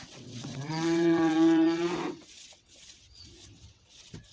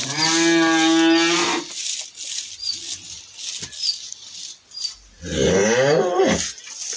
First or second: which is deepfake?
first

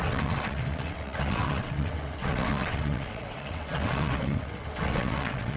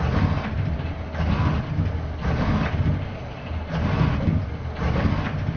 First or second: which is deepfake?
first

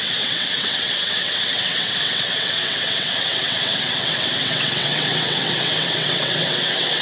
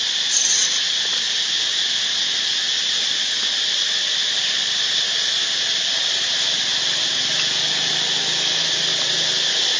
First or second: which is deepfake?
first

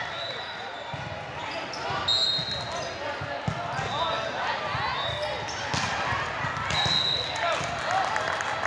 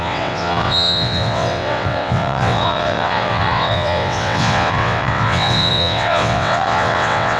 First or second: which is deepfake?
second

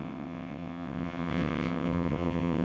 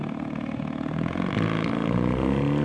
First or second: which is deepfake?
first